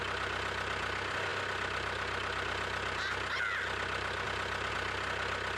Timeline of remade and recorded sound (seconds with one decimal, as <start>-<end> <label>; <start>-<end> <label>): 0.0-5.6 recorded